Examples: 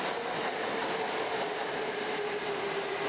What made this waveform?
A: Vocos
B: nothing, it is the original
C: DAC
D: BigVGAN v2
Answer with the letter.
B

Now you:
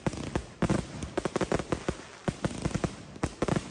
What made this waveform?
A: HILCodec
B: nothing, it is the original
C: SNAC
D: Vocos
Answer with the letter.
B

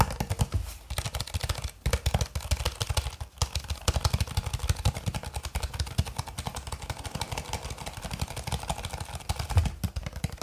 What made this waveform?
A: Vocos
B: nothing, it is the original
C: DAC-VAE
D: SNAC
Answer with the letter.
B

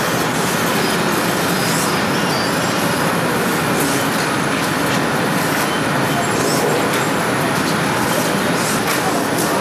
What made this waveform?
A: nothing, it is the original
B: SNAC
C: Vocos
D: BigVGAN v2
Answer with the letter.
A